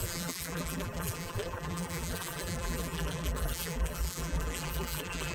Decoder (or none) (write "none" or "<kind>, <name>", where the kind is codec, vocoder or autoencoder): vocoder, BigVGAN v2